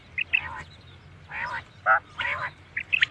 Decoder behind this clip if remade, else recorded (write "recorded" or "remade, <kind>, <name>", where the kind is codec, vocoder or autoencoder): recorded